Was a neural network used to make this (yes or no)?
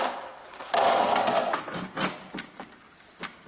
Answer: no